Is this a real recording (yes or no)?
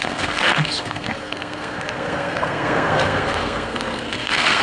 no